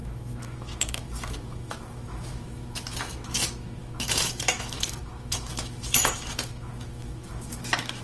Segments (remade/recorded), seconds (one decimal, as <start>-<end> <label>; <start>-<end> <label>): 0.0-8.0 remade